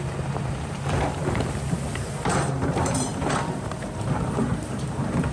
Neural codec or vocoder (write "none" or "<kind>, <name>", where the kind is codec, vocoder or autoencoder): vocoder, BigVGAN v2